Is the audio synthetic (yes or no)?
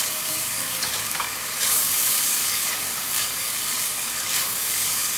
yes